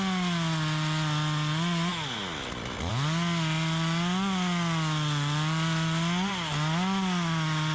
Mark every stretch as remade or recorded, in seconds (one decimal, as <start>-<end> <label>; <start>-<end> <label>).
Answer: 0.0-7.7 recorded